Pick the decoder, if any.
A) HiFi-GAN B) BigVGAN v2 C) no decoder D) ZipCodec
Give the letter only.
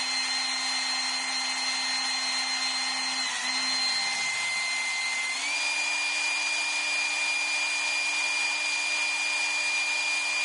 C